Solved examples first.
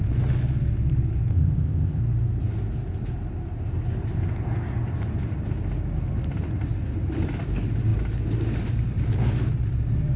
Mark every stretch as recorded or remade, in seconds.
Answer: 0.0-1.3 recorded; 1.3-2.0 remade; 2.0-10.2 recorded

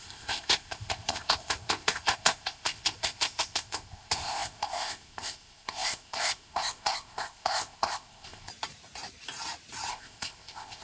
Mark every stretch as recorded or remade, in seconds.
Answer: 0.0-8.5 remade; 8.5-9.9 recorded; 9.9-10.8 remade

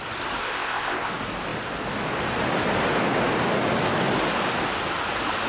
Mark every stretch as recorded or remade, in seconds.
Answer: 0.0-0.4 recorded; 0.4-1.1 remade; 1.1-5.5 recorded

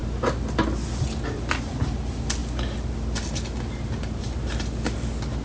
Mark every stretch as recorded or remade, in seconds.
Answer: 0.0-5.4 recorded

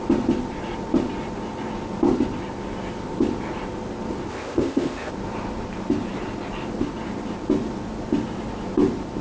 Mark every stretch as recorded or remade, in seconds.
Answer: 0.0-4.3 recorded; 4.3-5.1 remade; 5.1-9.2 recorded